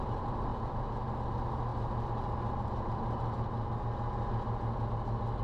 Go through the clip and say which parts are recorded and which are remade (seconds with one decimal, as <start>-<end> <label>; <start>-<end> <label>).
0.0-0.5 recorded; 0.5-1.0 remade; 1.0-5.4 recorded